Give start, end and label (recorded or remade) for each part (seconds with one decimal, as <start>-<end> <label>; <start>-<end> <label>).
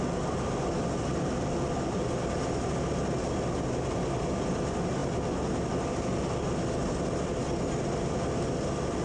0.0-9.0 recorded